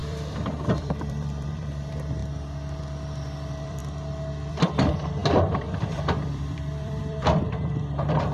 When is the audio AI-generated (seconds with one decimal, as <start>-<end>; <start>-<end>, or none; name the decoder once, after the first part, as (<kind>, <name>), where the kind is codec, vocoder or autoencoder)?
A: 0.0-2.2 (vocoder, BigVGAN v2); 2.8-3.8; 4.5-8.3